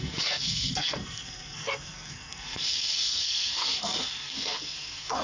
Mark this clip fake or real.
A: fake